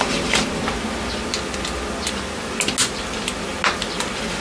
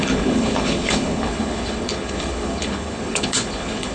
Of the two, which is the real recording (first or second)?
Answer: first